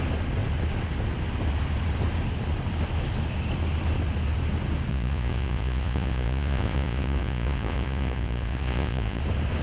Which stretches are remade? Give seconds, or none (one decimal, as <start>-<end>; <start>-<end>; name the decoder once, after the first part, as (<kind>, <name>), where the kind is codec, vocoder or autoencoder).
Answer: 4.9-9.2 (vocoder, Vocos)